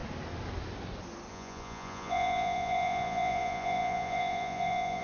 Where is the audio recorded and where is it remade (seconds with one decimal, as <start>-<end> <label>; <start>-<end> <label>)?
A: 0.0-1.3 recorded; 1.3-5.0 remade